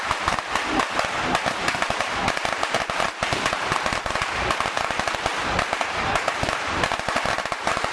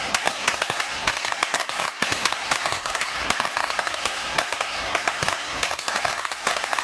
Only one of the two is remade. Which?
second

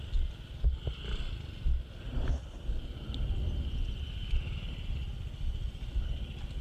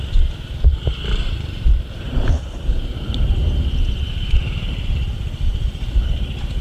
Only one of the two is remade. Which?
second